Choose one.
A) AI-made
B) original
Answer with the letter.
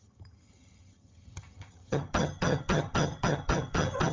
A